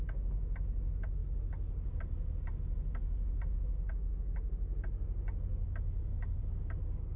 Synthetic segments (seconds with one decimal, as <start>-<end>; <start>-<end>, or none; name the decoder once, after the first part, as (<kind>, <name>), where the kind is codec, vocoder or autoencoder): none